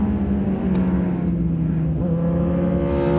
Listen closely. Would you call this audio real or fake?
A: real